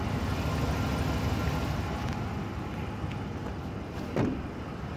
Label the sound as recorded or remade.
recorded